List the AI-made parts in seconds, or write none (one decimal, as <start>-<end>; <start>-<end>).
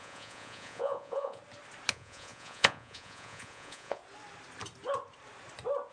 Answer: 0.0-1.4; 1.9-4.0